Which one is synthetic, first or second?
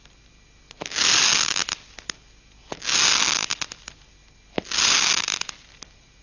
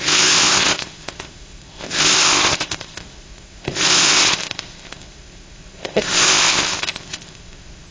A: second